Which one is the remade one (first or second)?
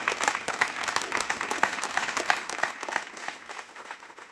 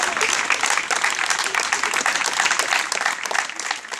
first